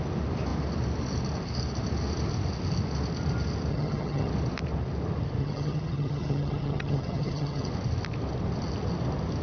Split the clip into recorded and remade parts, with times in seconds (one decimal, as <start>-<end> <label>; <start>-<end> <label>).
0.0-3.7 recorded; 3.7-4.3 remade; 4.3-5.4 recorded; 5.4-7.7 remade; 7.7-9.4 recorded